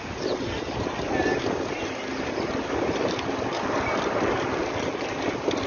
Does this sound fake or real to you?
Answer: real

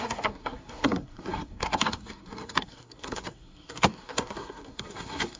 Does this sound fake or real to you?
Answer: fake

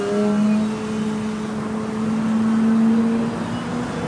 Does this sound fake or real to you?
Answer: real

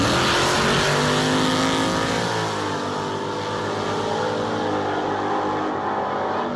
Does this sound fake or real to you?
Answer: real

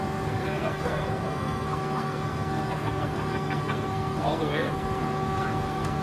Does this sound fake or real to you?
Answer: fake